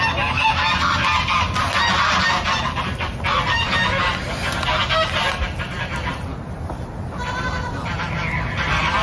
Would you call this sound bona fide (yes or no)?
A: yes